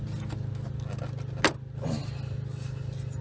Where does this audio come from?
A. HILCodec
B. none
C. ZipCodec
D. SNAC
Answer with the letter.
B